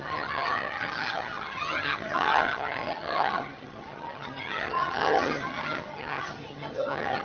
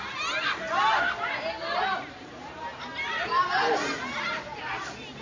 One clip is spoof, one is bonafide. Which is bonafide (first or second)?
second